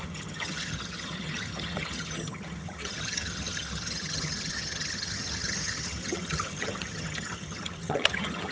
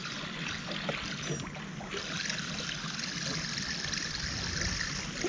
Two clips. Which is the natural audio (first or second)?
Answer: second